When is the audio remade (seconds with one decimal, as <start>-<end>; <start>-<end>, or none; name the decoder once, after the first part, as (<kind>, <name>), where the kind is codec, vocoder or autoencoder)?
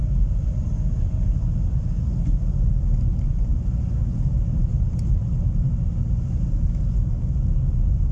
none